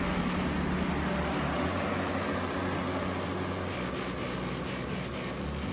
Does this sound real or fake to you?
real